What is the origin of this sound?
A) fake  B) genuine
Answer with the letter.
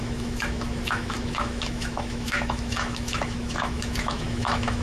A